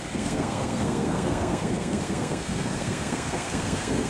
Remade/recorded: remade